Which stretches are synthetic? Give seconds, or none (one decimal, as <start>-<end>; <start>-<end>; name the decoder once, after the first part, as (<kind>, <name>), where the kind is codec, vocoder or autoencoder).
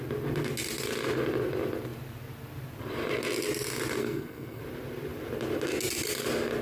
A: 4.0-4.6 (codec, SNAC)